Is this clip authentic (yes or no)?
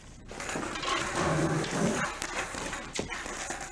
yes